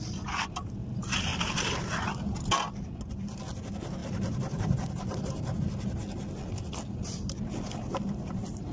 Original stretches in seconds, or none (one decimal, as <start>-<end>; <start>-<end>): 0.0-1.3; 2.5-4.0; 5.6-8.7

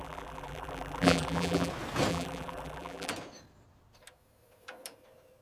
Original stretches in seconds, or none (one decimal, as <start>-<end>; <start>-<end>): 1.7-2.1; 3.1-5.4